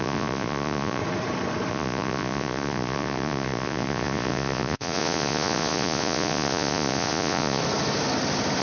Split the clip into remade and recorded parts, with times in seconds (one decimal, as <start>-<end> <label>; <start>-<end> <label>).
0.0-1.0 remade; 1.0-1.7 recorded; 1.7-7.6 remade; 7.6-8.6 recorded